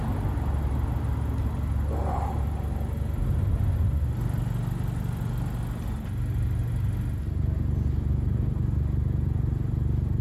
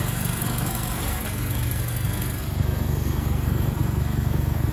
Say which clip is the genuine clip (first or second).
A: first